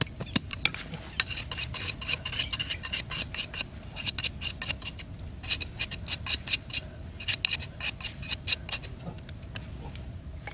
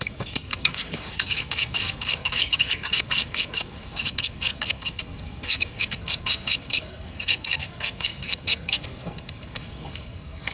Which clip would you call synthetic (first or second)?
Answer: second